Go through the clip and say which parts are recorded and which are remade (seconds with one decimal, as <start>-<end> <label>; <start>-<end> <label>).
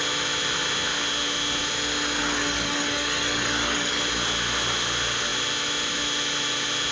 0.0-2.2 recorded; 2.2-4.0 remade; 4.0-6.9 recorded